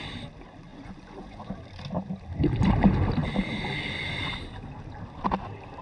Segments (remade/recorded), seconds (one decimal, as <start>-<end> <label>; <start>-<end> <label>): 0.0-0.7 recorded; 0.7-1.5 remade; 1.5-5.8 recorded

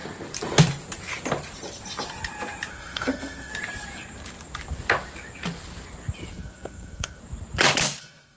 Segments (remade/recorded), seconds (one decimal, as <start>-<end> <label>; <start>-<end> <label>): 0.0-2.7 recorded; 2.7-3.5 remade; 3.5-6.3 recorded; 6.3-7.2 remade; 7.2-8.0 recorded; 8.0-8.4 remade

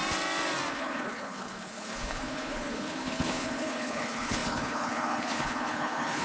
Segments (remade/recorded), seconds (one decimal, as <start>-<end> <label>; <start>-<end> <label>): 0.0-0.7 recorded; 0.7-6.2 remade

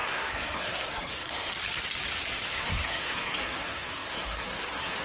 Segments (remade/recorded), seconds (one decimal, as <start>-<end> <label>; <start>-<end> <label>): 0.0-1.5 remade; 1.5-2.5 recorded; 2.5-5.0 remade

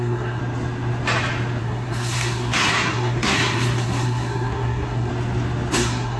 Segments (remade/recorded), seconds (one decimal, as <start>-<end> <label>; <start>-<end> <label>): 0.0-0.4 remade; 0.4-1.6 recorded; 1.6-5.1 remade; 5.1-5.7 recorded; 5.7-6.2 remade

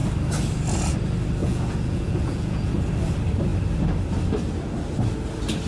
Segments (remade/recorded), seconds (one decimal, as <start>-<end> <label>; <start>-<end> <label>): 0.0-1.4 recorded; 1.4-2.7 remade; 2.7-5.7 recorded

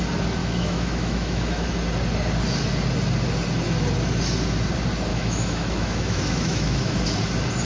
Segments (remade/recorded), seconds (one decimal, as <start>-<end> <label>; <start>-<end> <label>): 0.0-0.4 recorded; 0.4-1.7 remade; 1.7-5.1 recorded; 5.1-7.0 remade; 7.0-7.6 recorded